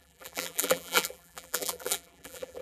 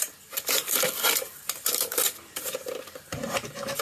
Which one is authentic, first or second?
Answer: second